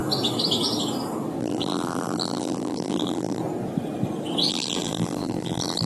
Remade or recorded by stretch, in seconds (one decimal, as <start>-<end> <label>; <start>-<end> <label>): 0.0-1.4 recorded; 1.4-3.4 remade; 3.4-4.5 recorded; 4.5-5.9 remade

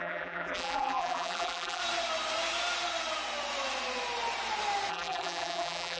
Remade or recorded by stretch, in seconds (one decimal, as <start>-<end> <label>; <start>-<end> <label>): 0.0-1.8 remade; 1.8-4.9 recorded; 4.9-6.0 remade

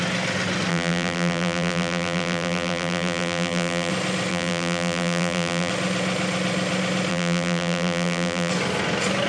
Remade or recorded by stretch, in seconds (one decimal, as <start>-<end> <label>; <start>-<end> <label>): 0.0-0.7 recorded; 0.7-3.9 remade; 3.9-4.3 recorded; 4.3-5.7 remade; 5.7-7.1 recorded; 7.1-8.5 remade; 8.5-9.3 recorded

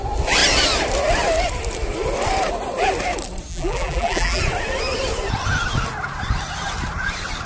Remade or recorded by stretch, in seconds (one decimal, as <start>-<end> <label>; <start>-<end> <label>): 0.0-3.5 recorded; 3.5-4.4 remade; 4.4-7.5 recorded

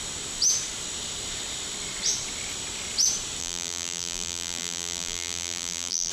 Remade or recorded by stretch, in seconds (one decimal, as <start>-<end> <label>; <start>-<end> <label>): 0.0-3.4 recorded; 3.4-6.1 remade